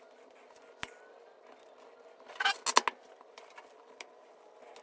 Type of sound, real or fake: real